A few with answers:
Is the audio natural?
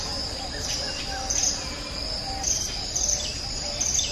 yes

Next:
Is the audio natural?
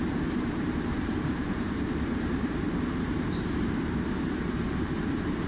no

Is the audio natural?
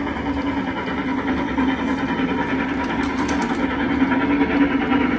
yes